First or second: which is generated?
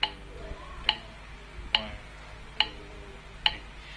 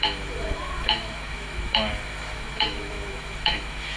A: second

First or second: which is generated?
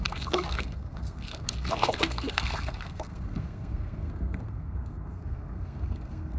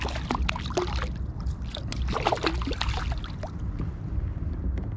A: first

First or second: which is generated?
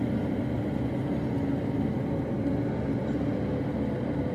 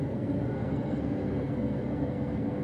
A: second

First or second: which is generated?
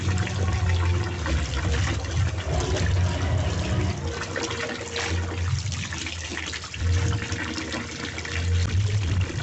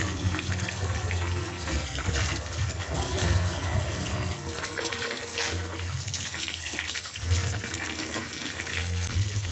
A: second